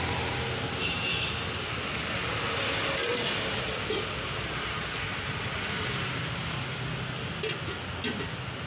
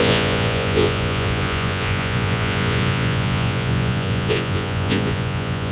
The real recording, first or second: first